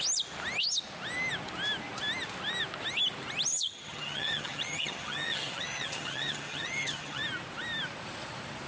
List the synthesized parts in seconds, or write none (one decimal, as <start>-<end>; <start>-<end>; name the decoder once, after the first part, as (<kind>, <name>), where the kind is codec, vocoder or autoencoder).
3.5-7.2 (vocoder, HiFi-GAN)